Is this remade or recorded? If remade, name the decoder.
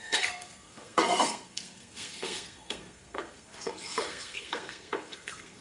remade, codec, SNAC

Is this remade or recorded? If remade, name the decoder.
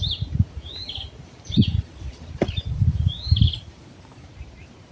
remade, vocoder, BigVGAN v2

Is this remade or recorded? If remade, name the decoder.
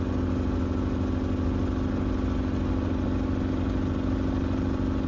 recorded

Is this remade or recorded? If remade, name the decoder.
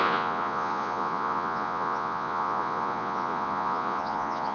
remade, vocoder, Vocos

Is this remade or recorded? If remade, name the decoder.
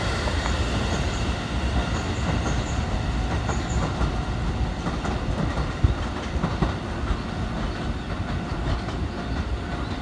recorded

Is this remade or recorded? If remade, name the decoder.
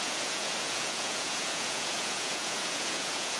remade, vocoder, Vocos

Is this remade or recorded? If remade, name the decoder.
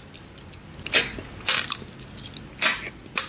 recorded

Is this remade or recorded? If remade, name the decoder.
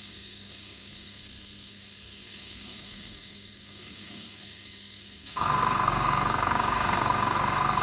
remade, codec, SNAC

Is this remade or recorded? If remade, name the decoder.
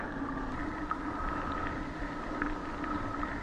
recorded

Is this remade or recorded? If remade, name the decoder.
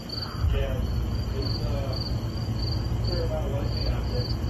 recorded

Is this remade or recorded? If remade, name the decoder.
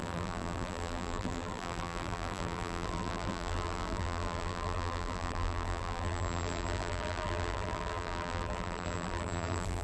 remade, vocoder, BigVGAN v2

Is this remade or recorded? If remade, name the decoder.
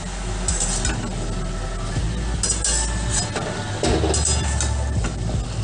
recorded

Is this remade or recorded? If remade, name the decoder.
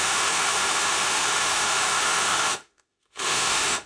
remade, autoencoder, DAC-VAE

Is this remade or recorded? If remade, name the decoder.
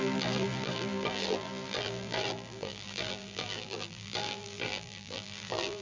remade, vocoder, BigVGAN v2